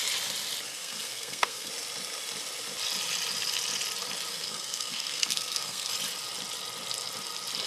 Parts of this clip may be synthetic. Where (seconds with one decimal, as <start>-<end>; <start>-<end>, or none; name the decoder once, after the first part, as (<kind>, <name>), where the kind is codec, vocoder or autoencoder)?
0.7-1.7 (codec, SNAC); 4.3-5.9